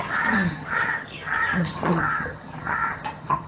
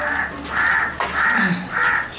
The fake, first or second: first